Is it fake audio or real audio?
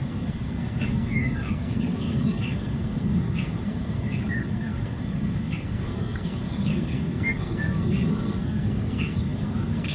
fake